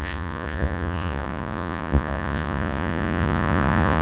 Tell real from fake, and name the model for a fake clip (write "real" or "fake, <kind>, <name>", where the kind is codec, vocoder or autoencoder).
fake, vocoder, Vocos